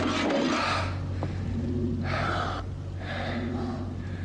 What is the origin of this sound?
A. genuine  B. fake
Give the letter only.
A